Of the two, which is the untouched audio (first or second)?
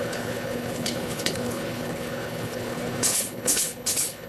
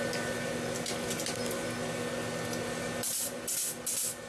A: second